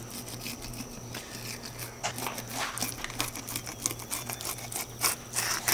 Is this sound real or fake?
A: real